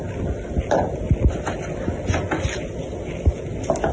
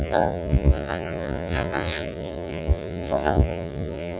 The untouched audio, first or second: first